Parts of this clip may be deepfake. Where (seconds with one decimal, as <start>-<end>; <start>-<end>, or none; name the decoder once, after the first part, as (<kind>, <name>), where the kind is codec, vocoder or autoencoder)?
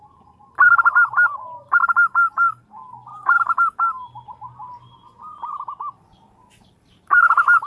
none